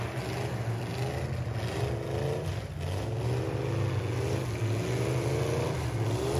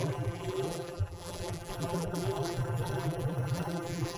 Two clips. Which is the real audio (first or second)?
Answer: first